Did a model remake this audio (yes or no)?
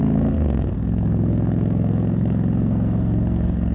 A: yes